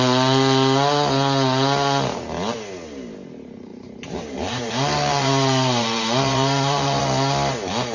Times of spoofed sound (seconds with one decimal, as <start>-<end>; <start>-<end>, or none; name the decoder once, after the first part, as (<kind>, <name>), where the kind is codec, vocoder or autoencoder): 3.7-7.0 (vocoder, BigVGAN v2)